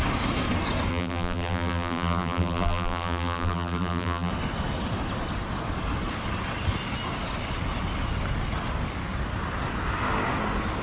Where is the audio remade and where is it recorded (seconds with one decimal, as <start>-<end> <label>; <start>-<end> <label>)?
0.0-0.9 recorded; 0.9-4.3 remade; 4.3-10.8 recorded